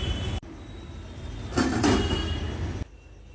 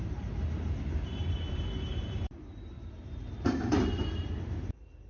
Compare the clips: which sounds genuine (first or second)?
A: first